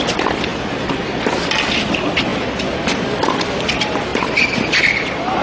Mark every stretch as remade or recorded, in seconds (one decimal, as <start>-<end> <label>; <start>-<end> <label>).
0.0-0.5 recorded; 0.5-1.0 remade; 1.0-2.3 recorded; 2.3-3.5 remade; 3.5-4.1 recorded; 4.1-4.8 remade; 4.8-5.4 recorded